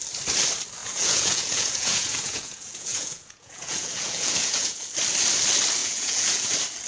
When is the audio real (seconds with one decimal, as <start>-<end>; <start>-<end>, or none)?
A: 0.0-0.8; 4.9-5.8; 6.5-6.9

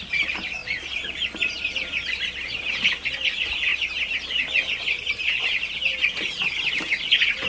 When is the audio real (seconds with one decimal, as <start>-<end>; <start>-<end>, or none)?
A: 0.0-7.5